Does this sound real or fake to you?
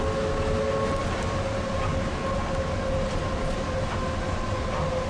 real